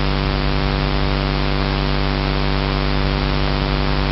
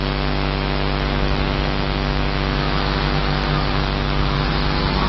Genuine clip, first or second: first